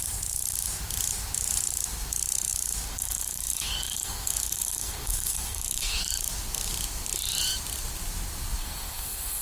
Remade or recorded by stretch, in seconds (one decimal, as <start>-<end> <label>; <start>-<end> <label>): 0.0-2.9 recorded; 2.9-6.1 remade; 6.1-8.6 recorded; 8.6-9.4 remade